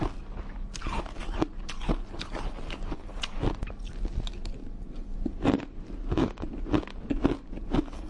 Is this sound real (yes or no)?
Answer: yes